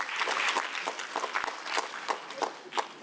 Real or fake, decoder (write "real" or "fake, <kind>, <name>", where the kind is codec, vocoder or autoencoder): real